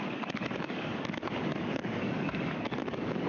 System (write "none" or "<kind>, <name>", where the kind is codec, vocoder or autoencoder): codec, DAC